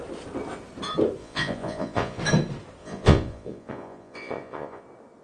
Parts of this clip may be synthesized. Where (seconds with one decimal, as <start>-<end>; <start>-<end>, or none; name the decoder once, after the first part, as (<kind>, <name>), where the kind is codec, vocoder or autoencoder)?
1.2-2.2 (vocoder, Vocos); 2.8-4.8